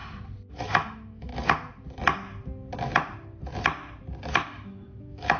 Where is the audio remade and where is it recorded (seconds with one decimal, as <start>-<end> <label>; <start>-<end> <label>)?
0.0-0.5 recorded; 0.5-1.3 remade; 1.3-4.5 recorded; 4.5-5.4 remade